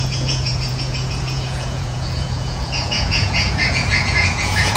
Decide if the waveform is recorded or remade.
remade